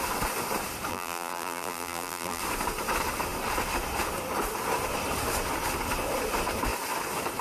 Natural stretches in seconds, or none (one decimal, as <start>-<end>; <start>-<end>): 0.0-0.9; 2.4-7.4

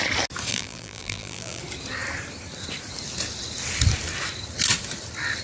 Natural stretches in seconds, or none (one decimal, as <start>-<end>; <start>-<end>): 0.0-0.5; 1.6-5.4

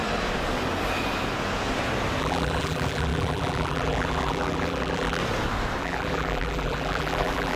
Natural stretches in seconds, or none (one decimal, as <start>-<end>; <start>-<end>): 0.0-2.2; 5.2-5.8

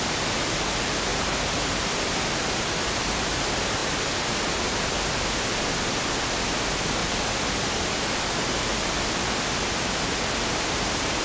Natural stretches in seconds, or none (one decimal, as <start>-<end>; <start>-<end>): 0.0-1.1; 3.2-7.0; 8.0-11.2

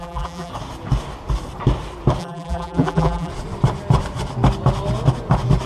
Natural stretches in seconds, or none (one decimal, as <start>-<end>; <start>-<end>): 0.5-2.2; 3.3-5.7

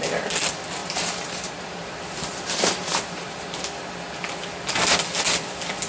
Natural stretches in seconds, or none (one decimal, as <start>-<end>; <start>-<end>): 0.0-0.8; 3.6-5.9